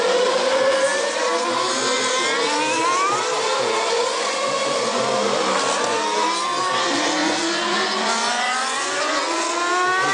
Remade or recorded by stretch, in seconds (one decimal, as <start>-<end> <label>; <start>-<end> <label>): 0.0-3.8 recorded; 3.8-5.0 remade; 5.0-7.2 recorded; 7.2-9.5 remade; 9.5-10.1 recorded